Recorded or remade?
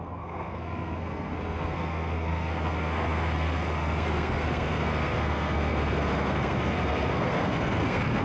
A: remade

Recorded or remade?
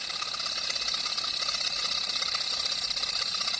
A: recorded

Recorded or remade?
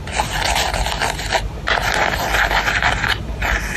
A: recorded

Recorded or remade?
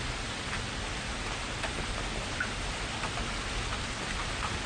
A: recorded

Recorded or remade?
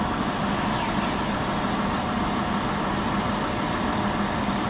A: recorded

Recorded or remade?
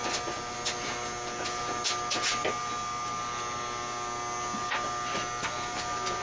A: recorded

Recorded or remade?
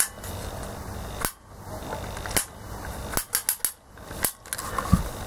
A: recorded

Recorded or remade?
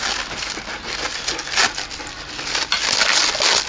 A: recorded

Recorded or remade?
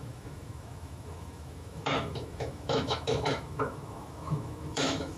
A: remade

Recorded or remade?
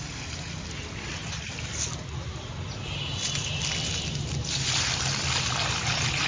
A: recorded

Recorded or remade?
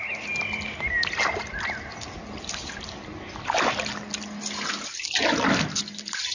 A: recorded